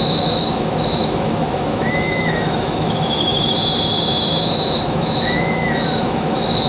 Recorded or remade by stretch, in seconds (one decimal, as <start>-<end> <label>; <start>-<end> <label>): 0.0-6.7 remade